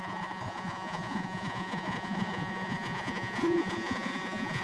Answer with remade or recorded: remade